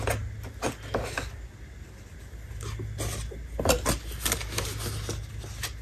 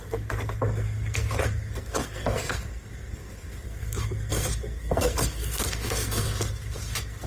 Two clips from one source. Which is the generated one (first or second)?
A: second